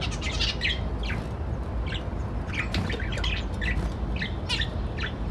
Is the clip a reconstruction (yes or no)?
no